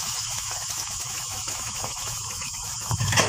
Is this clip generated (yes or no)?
yes